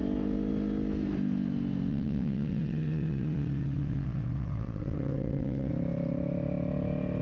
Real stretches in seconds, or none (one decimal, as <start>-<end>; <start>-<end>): 0.0-1.9; 5.7-7.2

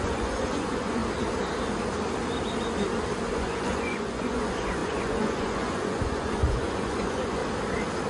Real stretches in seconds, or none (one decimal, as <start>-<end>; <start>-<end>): 1.0-3.3; 7.4-8.1